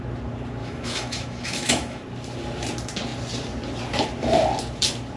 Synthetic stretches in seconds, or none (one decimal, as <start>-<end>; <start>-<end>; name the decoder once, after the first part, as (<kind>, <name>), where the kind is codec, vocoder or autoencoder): 0.6-2.0 (autoencoder, DAC-VAE)

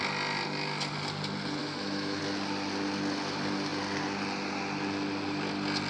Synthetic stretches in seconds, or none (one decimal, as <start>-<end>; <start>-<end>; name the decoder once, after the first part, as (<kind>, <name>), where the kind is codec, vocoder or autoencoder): 1.6-2.2 (autoencoder, DAC-VAE)

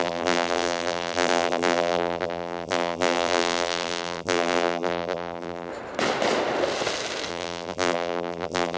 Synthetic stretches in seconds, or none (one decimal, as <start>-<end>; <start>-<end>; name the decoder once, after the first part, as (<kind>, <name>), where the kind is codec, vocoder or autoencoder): 0.0-5.7 (vocoder, BigVGAN v2); 7.3-8.8

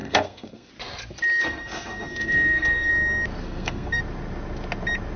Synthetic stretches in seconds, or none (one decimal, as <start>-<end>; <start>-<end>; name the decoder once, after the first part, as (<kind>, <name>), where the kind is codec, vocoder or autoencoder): 0.0-0.7 (codec, SNAC); 1.4-2.9; 3.4-4.0

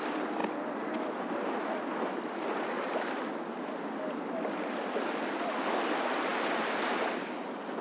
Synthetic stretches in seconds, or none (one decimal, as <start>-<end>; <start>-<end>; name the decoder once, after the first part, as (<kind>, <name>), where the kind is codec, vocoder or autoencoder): none

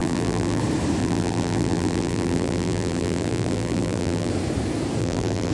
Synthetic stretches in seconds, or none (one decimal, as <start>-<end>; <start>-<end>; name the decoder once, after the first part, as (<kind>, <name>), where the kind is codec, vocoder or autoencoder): 0.0-0.6 (vocoder, BigVGAN v2); 1.0-4.3; 5.0-5.5

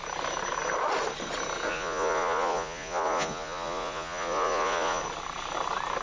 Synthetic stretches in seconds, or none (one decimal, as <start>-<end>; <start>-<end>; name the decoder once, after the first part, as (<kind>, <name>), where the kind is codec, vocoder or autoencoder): 1.7-5.0 (vocoder, Vocos)

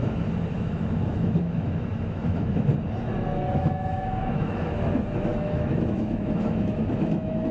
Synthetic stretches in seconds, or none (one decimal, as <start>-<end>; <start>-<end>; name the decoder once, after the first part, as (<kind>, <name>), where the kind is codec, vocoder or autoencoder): 0.0-2.7 (autoencoder, DAC-VAE); 3.5-7.5